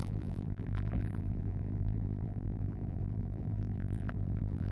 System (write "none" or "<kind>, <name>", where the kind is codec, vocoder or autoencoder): vocoder, BigVGAN v2